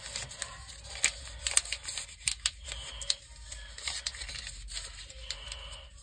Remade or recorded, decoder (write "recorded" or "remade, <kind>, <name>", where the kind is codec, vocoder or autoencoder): recorded